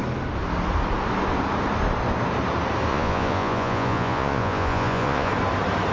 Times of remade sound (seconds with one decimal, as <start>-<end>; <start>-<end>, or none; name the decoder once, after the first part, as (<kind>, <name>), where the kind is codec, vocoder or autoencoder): 2.9-5.3 (vocoder, Vocos)